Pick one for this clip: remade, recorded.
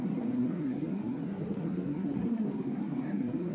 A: remade